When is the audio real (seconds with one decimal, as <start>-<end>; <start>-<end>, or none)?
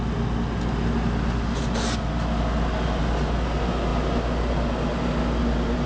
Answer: 0.0-5.9